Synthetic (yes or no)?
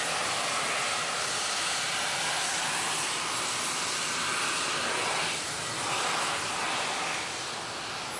no